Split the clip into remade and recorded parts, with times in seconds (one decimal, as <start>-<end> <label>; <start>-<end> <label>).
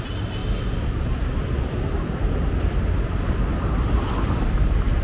0.0-5.0 recorded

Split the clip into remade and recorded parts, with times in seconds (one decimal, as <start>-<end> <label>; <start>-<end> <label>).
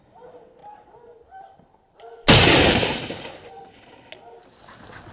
0.0-5.1 recorded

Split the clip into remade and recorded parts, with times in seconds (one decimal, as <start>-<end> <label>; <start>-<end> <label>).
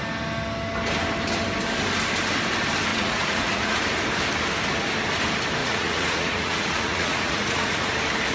0.0-2.9 recorded; 2.9-3.8 remade; 3.8-5.6 recorded; 5.6-7.9 remade; 7.9-8.3 recorded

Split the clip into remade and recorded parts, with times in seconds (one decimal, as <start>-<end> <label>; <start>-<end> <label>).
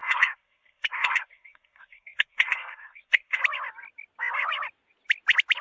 0.0-3.4 remade; 3.4-5.6 recorded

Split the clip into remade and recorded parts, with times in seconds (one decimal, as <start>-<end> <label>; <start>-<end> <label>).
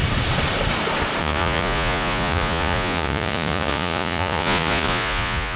0.0-1.2 recorded; 1.2-5.6 remade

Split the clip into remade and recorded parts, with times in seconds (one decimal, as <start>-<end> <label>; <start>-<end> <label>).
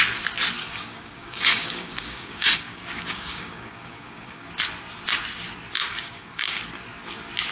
0.0-0.6 recorded; 0.6-4.5 remade; 4.5-5.8 recorded; 5.8-6.6 remade; 6.6-7.5 recorded